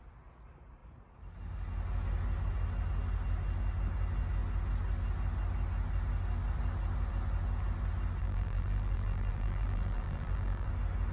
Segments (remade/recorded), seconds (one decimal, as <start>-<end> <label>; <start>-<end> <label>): 0.0-8.2 recorded; 8.2-10.7 remade; 10.7-11.1 recorded